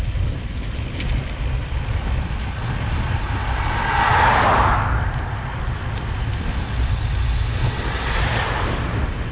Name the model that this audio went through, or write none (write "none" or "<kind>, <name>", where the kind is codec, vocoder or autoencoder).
none